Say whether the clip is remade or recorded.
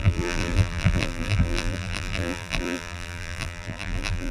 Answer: remade